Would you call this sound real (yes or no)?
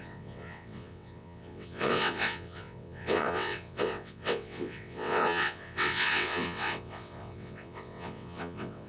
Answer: no